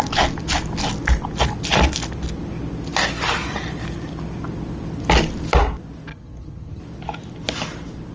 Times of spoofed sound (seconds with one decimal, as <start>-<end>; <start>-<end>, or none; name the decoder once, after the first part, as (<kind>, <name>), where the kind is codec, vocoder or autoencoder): 6.1-6.8 (vocoder, HiFi-GAN)